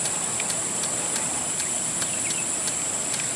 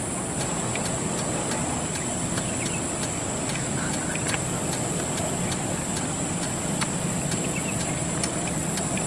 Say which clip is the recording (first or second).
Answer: second